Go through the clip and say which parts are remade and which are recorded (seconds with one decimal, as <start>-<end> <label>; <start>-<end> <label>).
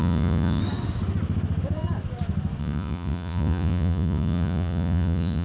0.0-0.6 remade; 0.6-2.6 recorded; 2.6-5.4 remade